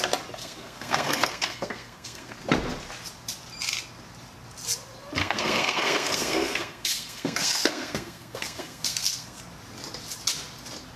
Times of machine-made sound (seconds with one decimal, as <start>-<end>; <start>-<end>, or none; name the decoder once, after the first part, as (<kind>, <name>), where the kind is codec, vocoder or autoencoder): 0.4-2.4 (codec, SNAC); 5.2-9.4